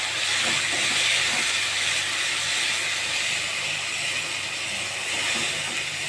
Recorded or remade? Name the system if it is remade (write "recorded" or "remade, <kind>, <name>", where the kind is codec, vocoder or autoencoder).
recorded